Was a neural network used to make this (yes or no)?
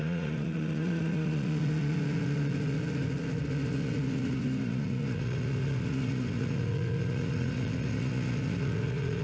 yes